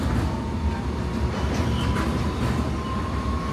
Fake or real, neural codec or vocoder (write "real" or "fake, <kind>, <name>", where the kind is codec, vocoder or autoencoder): real